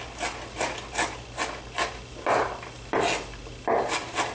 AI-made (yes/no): no